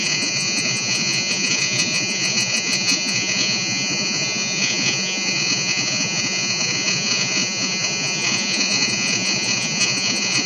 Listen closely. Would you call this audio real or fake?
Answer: fake